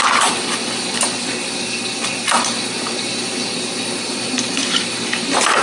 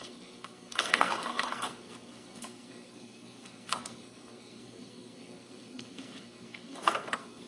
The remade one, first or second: second